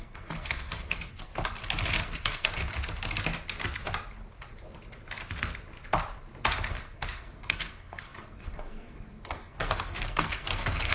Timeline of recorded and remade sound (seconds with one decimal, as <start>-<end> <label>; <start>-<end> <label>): 0.0-1.3 remade; 1.3-2.0 recorded; 2.0-2.6 remade; 2.6-6.7 recorded; 6.7-10.9 remade